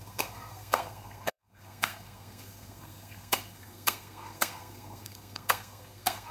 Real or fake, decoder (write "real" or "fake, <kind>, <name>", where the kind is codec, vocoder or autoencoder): fake, codec, SNAC